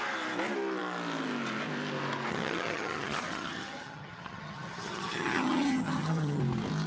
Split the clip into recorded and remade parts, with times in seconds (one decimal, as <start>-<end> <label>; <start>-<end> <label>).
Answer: 0.0-2.3 recorded; 2.3-6.4 remade; 6.4-6.9 recorded

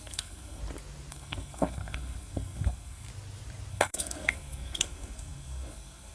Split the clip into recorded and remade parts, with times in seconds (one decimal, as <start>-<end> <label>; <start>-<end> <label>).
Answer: 0.0-0.6 remade; 0.6-1.1 recorded; 1.1-3.1 remade; 3.1-3.7 recorded; 3.7-6.1 remade

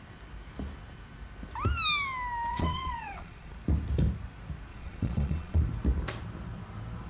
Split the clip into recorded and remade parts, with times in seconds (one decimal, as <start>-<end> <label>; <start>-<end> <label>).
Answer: 0.0-2.5 recorded; 2.5-3.5 remade; 3.5-4.7 recorded; 4.7-5.6 remade; 5.6-7.1 recorded

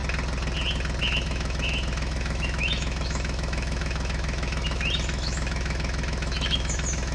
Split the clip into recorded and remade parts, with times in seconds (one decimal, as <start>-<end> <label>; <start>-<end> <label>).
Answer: 0.0-1.0 recorded; 1.0-7.1 remade

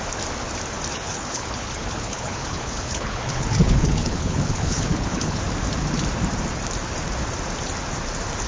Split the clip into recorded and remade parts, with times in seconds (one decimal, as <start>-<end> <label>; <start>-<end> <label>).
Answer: 0.0-0.9 recorded; 0.9-5.4 remade; 5.4-8.5 recorded

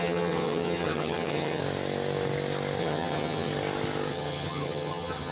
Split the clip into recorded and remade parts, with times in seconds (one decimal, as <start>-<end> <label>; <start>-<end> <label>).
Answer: 0.0-1.6 remade; 1.6-2.8 recorded; 2.8-3.5 remade; 3.5-4.1 recorded; 4.1-5.3 remade

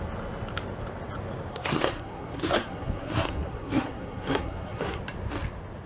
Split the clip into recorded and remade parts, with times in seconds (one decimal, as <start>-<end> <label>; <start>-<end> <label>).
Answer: 0.0-1.5 recorded; 1.5-5.0 remade; 5.0-5.9 recorded

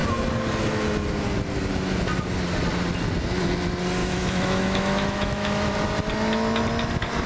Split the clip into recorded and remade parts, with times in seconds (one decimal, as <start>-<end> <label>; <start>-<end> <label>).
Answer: 0.0-4.0 recorded; 4.0-5.7 remade; 5.7-7.3 recorded